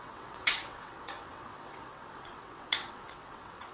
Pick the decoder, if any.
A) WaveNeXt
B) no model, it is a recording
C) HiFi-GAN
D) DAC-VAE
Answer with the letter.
A